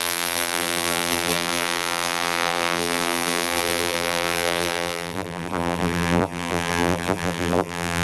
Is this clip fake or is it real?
fake